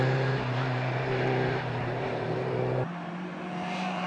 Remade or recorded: remade